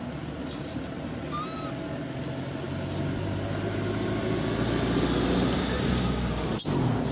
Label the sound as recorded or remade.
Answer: recorded